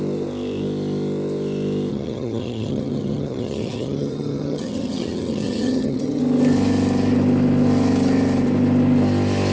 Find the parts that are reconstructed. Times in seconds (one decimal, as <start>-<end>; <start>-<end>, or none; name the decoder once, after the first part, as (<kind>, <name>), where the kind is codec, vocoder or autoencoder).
1.9-6.2 (vocoder, HiFi-GAN)

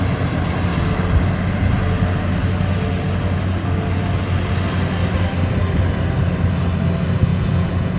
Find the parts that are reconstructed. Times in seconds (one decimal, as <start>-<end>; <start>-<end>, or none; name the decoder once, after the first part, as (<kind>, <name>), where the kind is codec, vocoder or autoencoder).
7.3-8.0 (vocoder, Vocos)

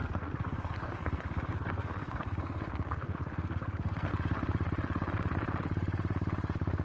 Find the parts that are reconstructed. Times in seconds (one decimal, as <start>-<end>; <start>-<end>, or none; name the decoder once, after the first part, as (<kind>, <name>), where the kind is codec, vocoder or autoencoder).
0.0-4.1 (codec, SNAC)

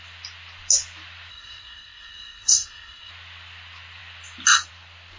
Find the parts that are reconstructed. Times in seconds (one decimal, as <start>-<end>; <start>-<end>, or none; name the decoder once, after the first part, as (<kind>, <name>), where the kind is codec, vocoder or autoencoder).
1.3-3.1 (codec, SNAC)

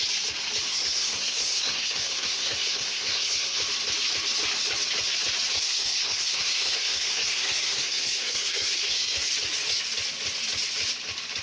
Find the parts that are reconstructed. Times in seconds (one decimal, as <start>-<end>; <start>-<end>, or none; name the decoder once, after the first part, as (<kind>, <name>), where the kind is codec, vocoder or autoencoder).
0.7-3.6 (codec, SNAC); 5.5-9.3

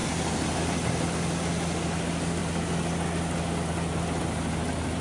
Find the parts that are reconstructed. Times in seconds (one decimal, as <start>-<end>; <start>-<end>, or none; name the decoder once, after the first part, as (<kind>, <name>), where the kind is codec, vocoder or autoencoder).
none